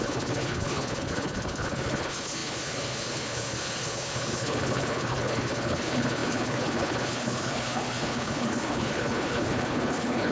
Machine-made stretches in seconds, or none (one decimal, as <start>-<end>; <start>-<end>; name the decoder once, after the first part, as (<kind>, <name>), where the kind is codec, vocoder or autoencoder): 0.0-10.3 (codec, HILCodec)